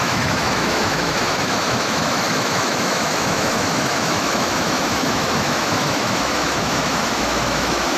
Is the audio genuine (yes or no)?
no